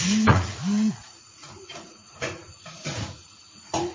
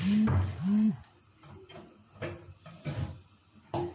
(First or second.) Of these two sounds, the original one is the second